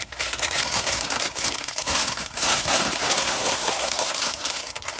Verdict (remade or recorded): remade